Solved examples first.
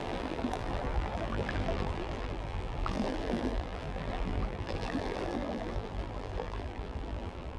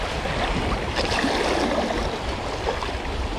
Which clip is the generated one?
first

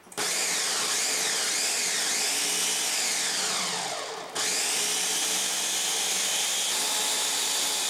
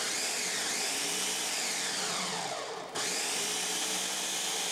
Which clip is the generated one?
second